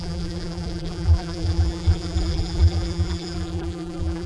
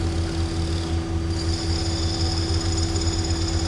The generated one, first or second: first